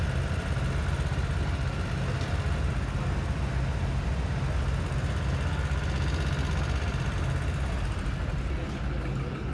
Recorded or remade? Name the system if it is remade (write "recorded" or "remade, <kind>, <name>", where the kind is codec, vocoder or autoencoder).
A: recorded